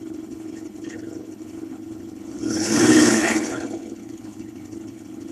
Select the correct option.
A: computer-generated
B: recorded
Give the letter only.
A